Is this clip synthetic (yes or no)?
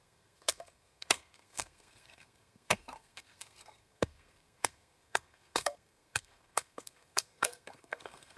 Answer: yes